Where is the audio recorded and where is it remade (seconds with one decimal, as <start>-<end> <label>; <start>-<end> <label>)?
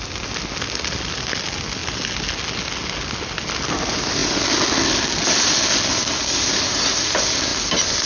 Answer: 0.0-8.1 recorded